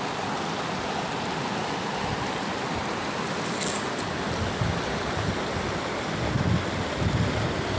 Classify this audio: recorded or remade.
recorded